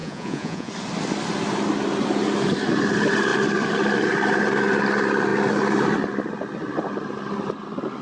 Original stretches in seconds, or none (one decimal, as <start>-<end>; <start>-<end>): 0.7-8.0